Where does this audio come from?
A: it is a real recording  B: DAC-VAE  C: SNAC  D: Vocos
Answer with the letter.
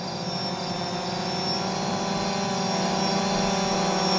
A